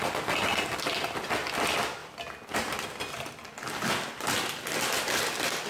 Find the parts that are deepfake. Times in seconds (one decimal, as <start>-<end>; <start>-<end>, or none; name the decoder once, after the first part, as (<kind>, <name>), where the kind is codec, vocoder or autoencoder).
none